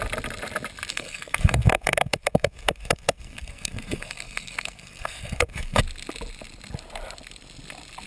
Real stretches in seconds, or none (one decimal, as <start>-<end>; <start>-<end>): 0.0-0.9; 5.8-8.1